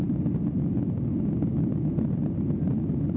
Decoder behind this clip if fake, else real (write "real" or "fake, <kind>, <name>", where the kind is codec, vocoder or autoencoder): real